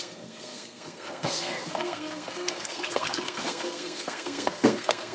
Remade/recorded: remade